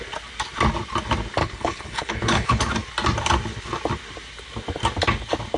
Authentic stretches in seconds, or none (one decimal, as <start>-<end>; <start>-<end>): 0.0-1.4; 2.6-5.6